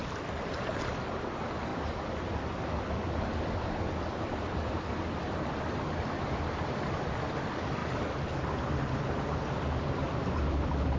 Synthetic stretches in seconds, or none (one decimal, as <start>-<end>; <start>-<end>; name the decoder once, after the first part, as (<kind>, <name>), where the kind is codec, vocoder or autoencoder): none